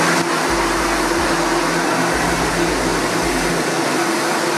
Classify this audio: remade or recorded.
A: recorded